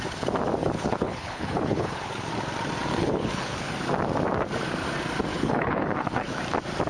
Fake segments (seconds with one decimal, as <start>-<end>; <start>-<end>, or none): 0.6-2.3; 3.0-3.7; 5.3-6.4

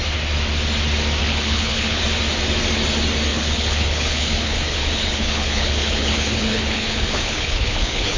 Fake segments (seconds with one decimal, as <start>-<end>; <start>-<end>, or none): 1.2-2.0; 3.3-8.2

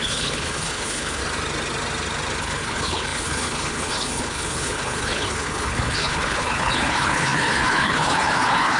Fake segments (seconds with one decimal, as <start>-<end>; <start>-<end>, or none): 0.0-1.2; 2.4-8.8

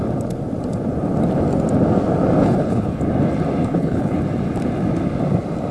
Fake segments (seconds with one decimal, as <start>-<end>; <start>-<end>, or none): 2.4-3.0; 3.6-4.2

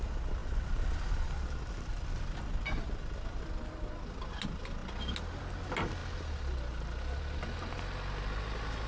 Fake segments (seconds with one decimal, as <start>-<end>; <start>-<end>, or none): none

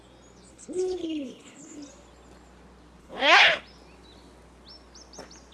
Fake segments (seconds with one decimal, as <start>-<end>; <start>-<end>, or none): 0.5-1.8; 3.0-3.6

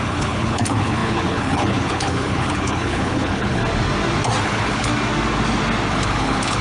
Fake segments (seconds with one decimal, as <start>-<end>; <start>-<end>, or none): 0.0-3.6; 4.4-4.9; 5.9-6.6

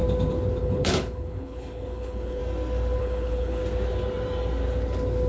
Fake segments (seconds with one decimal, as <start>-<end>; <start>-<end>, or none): 0.6-2.4; 3.0-3.6